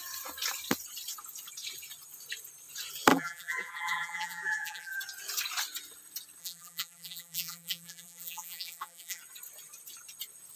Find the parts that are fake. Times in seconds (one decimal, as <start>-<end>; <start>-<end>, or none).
3.1-5.0; 6.4-9.2